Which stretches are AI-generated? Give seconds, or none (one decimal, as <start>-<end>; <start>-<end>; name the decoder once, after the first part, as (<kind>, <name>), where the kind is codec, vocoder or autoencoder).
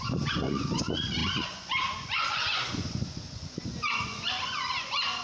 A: 0.0-5.2 (vocoder, Vocos)